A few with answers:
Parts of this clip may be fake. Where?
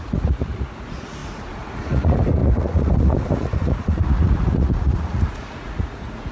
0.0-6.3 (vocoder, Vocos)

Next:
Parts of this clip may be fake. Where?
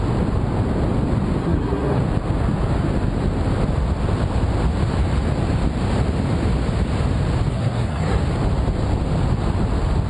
1.4-2.0 (codec, SNAC); 7.5-8.2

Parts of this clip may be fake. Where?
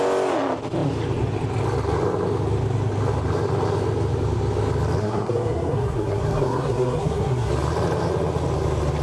5.0-7.5 (codec, SNAC)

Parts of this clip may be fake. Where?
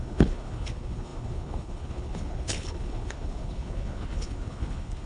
0.0-5.1 (codec, HILCodec)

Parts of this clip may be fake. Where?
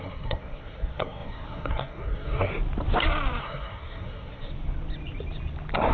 0.0-2.5 (codec, SNAC); 3.4-4.5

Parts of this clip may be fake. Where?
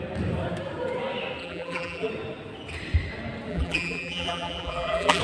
1.4-2.1 (vocoder, BigVGAN v2); 3.5-5.2